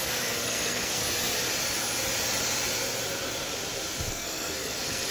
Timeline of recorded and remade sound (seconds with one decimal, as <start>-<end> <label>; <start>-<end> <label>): 0.0-1.0 remade; 1.0-4.1 recorded; 4.1-5.1 remade